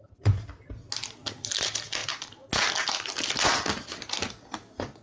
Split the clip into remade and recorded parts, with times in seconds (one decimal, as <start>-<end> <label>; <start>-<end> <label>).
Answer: 0.0-5.0 recorded